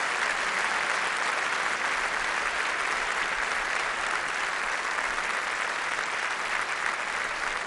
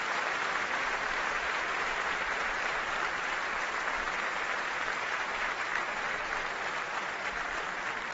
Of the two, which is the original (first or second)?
first